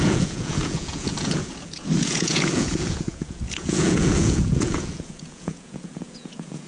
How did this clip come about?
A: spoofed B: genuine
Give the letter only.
A